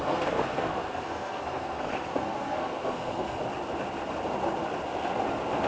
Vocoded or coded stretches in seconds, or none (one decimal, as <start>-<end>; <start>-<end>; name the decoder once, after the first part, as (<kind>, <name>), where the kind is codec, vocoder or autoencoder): 0.0-3.4 (codec, SNAC)